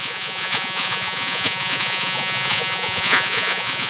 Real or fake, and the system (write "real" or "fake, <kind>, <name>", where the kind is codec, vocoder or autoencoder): fake, vocoder, Vocos